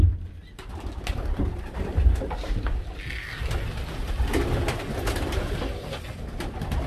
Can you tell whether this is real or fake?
real